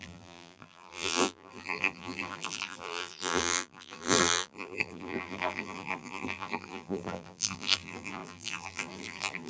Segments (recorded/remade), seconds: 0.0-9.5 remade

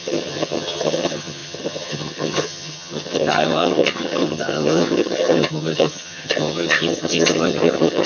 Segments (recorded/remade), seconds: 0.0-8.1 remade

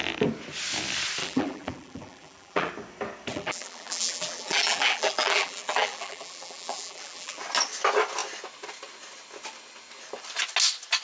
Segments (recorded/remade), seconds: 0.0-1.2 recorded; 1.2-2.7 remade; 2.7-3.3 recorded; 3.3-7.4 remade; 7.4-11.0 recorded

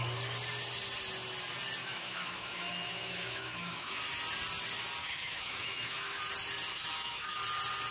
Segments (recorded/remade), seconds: 0.0-1.8 recorded; 1.8-4.0 remade; 4.0-5.0 recorded; 5.0-6.2 remade; 6.2-6.7 recorded; 6.7-7.4 remade; 7.4-7.9 recorded